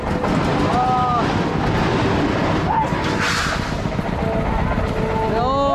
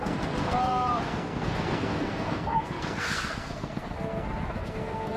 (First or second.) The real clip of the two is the first